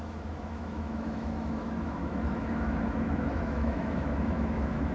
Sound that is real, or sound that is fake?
fake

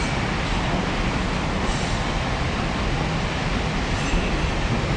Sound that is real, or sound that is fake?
real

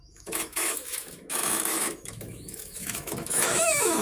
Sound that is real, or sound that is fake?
fake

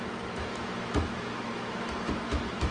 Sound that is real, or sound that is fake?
fake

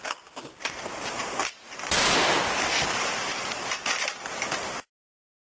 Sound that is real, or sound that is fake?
real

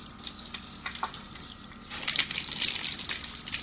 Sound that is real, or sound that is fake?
real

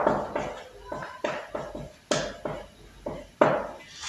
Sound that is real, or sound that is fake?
real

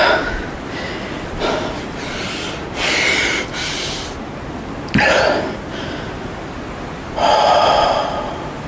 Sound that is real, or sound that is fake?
real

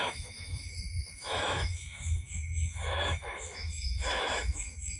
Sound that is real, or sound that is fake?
fake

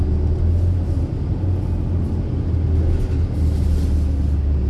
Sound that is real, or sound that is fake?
real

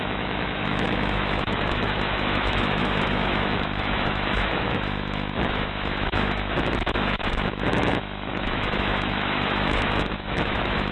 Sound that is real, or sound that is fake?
fake